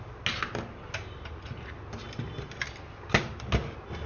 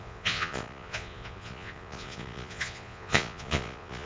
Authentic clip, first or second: first